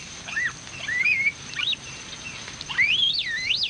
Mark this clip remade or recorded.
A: recorded